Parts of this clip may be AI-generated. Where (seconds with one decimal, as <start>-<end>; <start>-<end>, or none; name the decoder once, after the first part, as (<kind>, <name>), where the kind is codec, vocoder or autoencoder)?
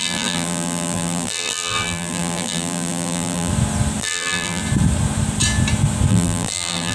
0.0-3.5 (vocoder, BigVGAN v2); 4.0-4.6; 6.1-6.9